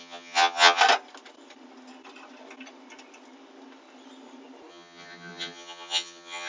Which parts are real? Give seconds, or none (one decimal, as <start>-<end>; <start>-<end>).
0.8-4.7